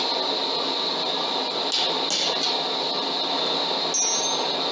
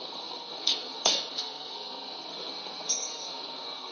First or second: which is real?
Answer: first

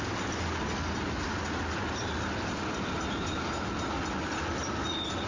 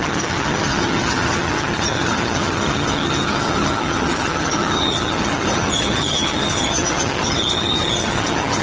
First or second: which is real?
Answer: first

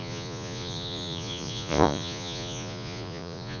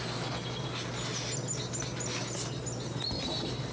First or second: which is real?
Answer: second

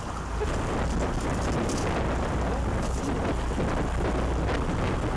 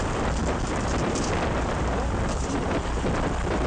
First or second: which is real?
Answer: first